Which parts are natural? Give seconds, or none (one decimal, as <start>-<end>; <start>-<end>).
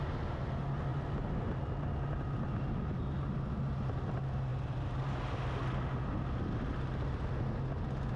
0.0-8.2